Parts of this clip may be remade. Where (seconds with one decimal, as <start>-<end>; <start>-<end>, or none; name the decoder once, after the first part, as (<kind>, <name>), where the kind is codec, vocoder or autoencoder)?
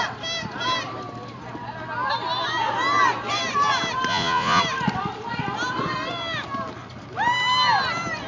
4.1-4.6 (vocoder, Vocos)